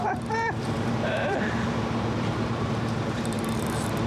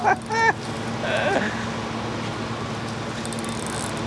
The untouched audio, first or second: second